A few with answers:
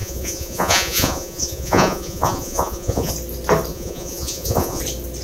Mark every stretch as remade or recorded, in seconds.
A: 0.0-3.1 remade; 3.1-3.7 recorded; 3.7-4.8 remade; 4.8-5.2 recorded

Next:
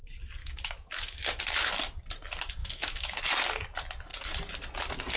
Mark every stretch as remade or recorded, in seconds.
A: 0.0-0.4 recorded; 0.4-1.4 remade; 1.4-2.6 recorded; 2.6-3.2 remade; 3.2-5.2 recorded

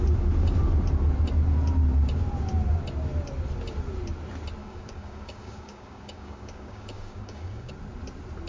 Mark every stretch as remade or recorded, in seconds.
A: 0.0-4.6 recorded; 4.6-7.7 remade; 7.7-8.5 recorded

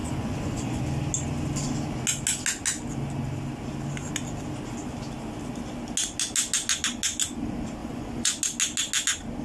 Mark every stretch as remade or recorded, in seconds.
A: 0.0-0.8 remade; 0.8-7.8 recorded; 7.8-8.4 remade; 8.4-9.4 recorded